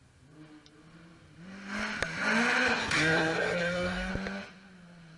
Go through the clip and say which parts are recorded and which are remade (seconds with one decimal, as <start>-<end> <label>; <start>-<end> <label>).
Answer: 0.0-2.8 recorded; 2.8-4.1 remade; 4.1-5.2 recorded